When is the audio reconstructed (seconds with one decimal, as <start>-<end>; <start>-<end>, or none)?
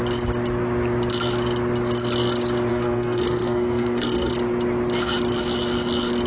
2.7-4.3